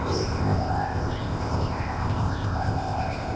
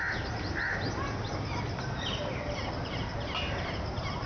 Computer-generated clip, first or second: first